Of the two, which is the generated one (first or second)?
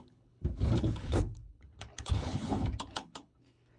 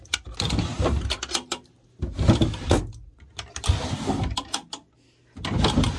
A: first